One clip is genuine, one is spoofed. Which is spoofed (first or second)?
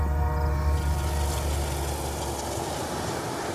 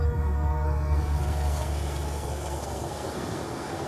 second